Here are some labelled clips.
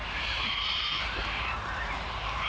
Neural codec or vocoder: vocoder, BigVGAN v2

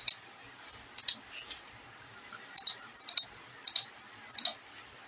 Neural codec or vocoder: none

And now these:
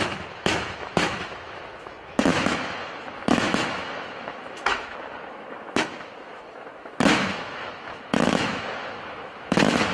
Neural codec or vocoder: autoencoder, DAC-VAE